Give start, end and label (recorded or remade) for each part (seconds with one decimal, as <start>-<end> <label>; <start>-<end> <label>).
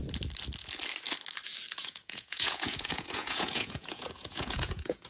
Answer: 0.0-1.8 recorded; 1.8-5.1 remade